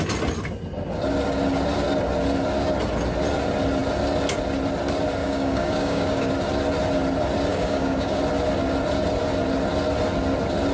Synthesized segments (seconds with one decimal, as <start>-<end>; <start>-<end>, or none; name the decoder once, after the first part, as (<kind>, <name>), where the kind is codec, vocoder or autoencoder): 5.2-6.3 (codec, DAC); 7.5-8.2